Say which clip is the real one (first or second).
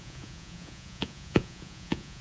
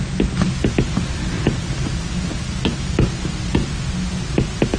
second